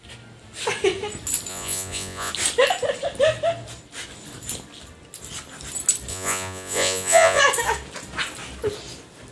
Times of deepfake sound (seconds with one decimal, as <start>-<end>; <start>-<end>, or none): 1.5-2.3; 6.1-7.4